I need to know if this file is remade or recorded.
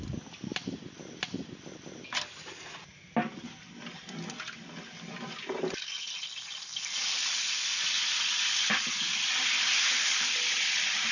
recorded